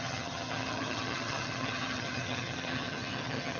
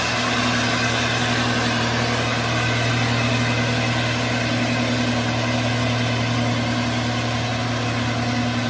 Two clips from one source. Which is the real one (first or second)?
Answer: second